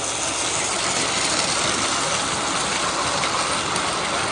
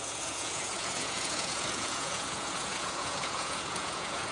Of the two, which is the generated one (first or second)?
second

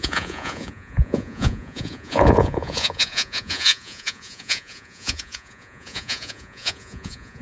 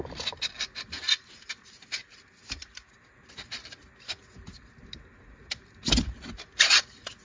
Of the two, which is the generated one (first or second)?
first